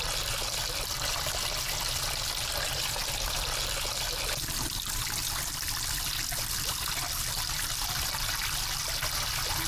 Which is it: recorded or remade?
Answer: recorded